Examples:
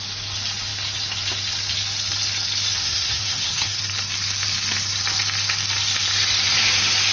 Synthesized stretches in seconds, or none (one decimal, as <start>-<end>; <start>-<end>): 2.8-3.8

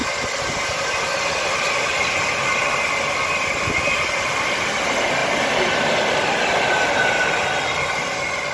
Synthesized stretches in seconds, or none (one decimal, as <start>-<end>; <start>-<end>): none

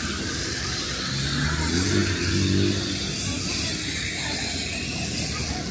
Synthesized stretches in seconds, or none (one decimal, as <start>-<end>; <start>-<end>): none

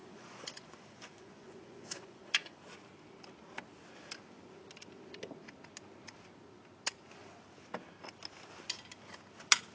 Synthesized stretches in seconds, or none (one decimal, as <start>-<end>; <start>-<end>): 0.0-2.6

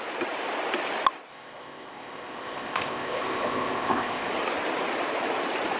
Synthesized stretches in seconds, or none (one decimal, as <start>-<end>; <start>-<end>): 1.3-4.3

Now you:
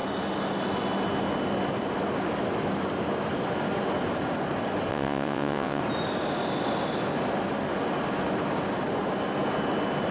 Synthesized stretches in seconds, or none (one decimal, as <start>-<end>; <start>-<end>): 4.9-5.8

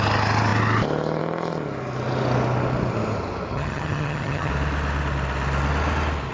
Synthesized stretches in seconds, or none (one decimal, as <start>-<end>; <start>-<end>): 3.5-4.5

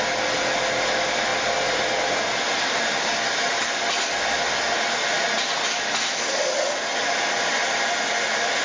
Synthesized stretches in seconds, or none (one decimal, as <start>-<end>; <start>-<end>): none